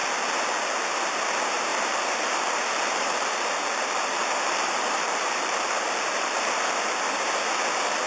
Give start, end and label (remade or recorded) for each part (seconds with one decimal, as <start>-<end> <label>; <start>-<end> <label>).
0.0-1.7 recorded; 1.7-6.6 remade; 6.6-8.1 recorded